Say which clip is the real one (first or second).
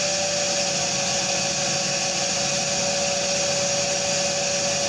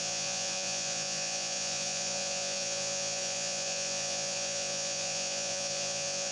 first